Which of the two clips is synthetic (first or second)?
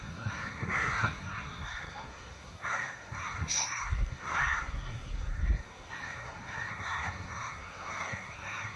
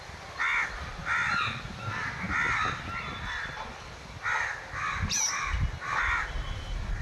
first